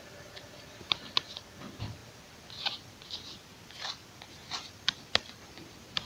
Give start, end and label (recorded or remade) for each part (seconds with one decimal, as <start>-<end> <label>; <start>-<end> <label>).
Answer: 0.0-2.0 remade; 2.0-5.5 recorded; 5.5-6.0 remade